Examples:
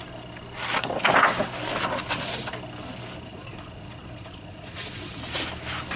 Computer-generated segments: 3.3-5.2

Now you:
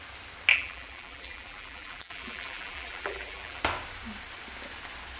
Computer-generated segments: 0.5-3.6

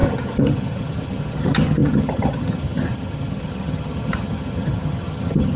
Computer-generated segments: 0.0-5.6